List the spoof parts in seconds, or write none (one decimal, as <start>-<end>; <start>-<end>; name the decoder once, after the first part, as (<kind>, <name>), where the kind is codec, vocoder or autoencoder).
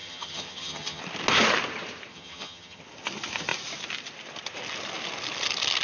0.0-1.0 (vocoder, HiFi-GAN); 2.1-2.8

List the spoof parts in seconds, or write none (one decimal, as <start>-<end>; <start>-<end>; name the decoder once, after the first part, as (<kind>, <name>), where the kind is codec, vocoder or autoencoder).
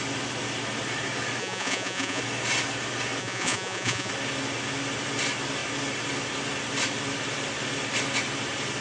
1.4-2.2 (vocoder, Vocos); 3.2-4.1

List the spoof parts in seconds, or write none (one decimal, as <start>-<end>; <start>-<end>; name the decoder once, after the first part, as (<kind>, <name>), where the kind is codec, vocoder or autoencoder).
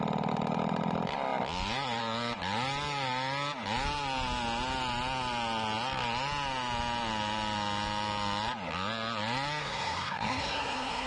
9.6-11.1 (codec, SNAC)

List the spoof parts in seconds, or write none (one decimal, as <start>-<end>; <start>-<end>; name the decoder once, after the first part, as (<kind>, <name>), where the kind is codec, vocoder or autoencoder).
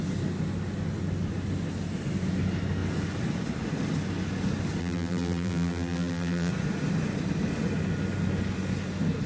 4.8-6.5 (vocoder, BigVGAN v2)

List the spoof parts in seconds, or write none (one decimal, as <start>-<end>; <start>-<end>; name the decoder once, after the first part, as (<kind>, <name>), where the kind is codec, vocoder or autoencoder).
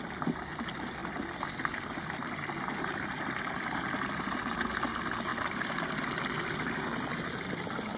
none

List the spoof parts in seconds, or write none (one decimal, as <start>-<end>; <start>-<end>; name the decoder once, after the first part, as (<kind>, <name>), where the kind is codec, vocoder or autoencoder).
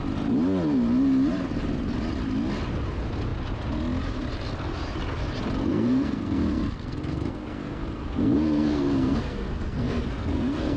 5.6-10.8 (codec, SNAC)